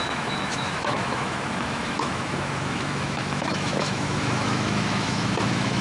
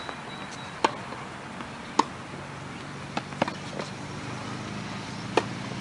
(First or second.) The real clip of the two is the second